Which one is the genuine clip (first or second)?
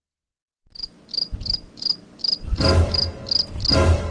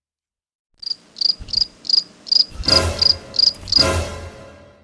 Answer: second